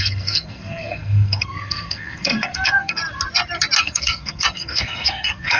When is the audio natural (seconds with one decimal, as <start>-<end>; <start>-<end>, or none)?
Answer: 3.0-3.8